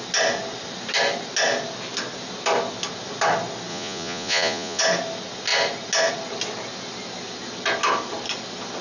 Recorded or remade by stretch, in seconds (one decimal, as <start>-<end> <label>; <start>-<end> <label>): 0.0-3.7 recorded; 3.7-4.8 remade; 4.8-8.8 recorded